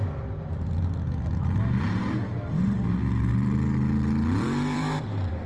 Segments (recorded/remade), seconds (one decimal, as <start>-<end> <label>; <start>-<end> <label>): 0.0-3.3 recorded; 3.3-5.5 remade